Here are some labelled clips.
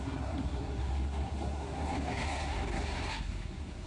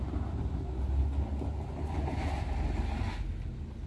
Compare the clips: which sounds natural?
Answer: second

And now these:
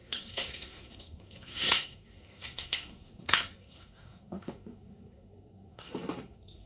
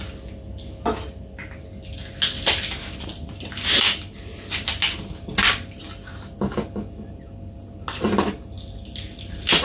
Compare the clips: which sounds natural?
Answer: second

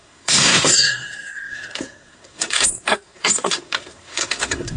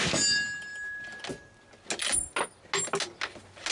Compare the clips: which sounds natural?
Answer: second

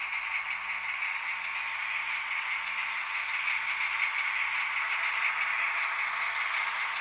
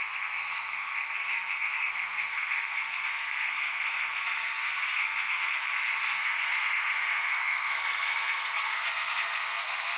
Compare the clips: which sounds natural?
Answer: first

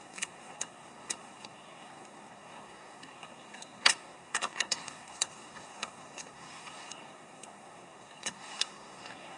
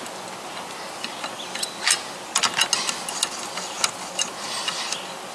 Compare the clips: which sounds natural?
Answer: second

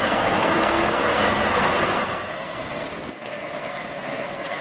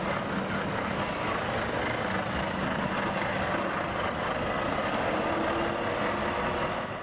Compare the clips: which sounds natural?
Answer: second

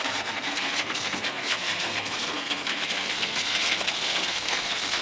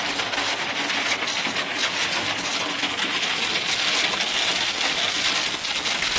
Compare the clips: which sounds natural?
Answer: second